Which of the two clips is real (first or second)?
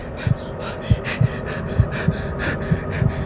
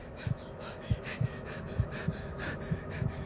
first